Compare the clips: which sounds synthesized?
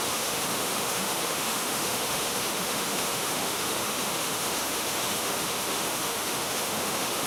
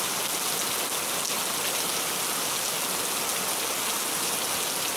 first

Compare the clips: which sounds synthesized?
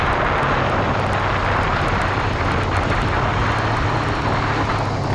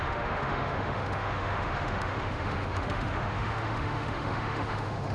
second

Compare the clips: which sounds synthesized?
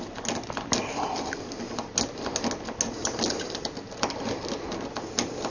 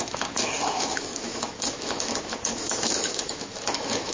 second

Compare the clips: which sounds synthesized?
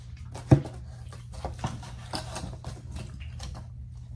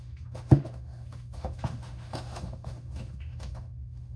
second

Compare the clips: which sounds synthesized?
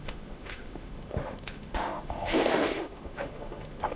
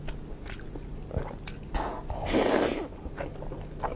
first